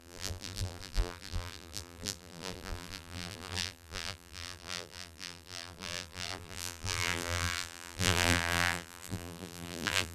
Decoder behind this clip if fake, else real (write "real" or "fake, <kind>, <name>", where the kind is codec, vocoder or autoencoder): fake, vocoder, BigVGAN v2